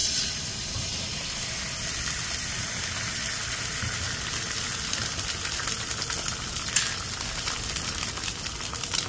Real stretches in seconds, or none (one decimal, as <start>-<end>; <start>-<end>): 0.0-9.1